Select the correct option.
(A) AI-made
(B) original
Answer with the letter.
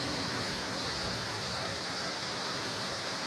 A